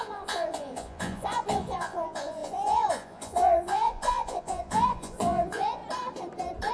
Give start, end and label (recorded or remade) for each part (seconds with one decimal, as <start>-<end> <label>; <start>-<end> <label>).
0.0-5.8 remade; 5.8-6.7 recorded